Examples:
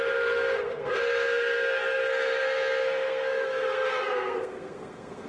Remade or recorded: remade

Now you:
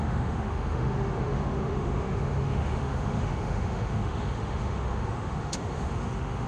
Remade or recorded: remade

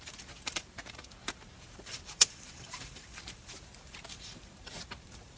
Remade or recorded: remade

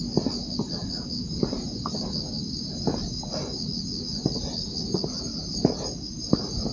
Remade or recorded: recorded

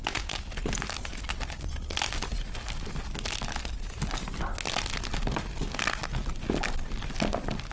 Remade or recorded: recorded